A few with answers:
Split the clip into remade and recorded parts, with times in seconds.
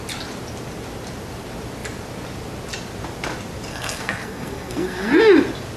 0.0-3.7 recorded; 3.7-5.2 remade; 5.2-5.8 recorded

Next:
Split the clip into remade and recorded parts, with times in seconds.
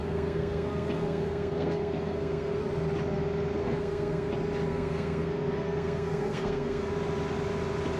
0.0-2.6 remade; 2.6-3.6 recorded; 3.6-4.3 remade; 4.3-4.7 recorded; 4.7-6.9 remade; 6.9-8.0 recorded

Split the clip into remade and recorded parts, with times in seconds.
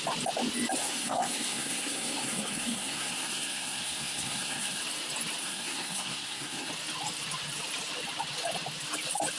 0.0-0.8 recorded; 0.8-4.8 remade; 4.8-5.4 recorded; 5.4-6.7 remade; 6.7-9.4 recorded